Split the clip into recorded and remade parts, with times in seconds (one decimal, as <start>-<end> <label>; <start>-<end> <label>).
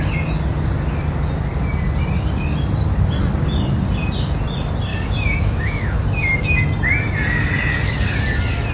0.0-4.9 recorded; 4.9-6.6 remade; 6.6-8.7 recorded